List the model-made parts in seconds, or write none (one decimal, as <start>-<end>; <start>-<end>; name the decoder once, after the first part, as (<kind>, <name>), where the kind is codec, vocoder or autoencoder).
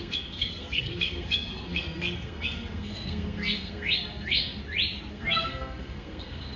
0.0-4.6 (codec, SNAC); 5.1-6.6